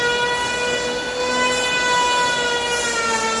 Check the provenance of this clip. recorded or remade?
recorded